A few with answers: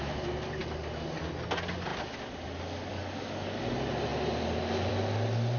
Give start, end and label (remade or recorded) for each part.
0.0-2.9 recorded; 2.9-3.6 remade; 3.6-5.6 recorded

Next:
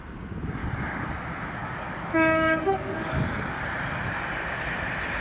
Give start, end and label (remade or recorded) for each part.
0.0-0.6 recorded; 0.6-1.1 remade; 1.1-1.6 recorded; 1.6-3.6 remade; 3.6-5.2 recorded

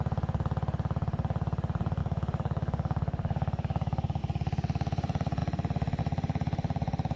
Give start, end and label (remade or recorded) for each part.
0.0-2.0 recorded; 2.0-4.2 remade; 4.2-7.2 recorded

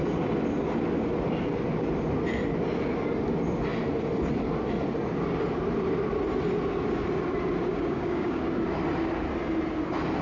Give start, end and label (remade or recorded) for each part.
0.0-7.7 recorded; 7.7-8.4 remade; 8.4-10.2 recorded

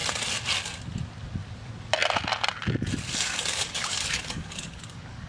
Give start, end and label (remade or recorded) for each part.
0.0-3.2 recorded; 3.2-5.3 remade

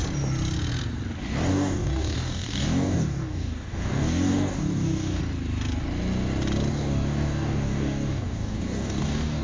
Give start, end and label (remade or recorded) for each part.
0.0-1.5 recorded; 1.5-5.2 remade; 5.2-6.7 recorded; 6.7-9.4 remade

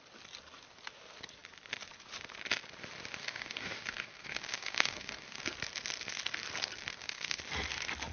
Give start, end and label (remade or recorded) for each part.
0.0-3.2 recorded; 3.2-5.4 remade; 5.4-6.9 recorded; 6.9-7.4 remade; 7.4-8.1 recorded

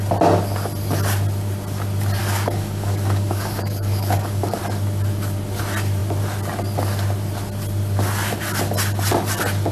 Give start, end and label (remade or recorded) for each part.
0.0-2.2 recorded; 2.2-4.6 remade; 4.6-9.7 recorded